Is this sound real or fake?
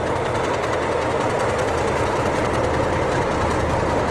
fake